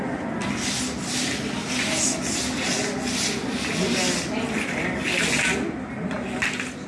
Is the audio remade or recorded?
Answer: recorded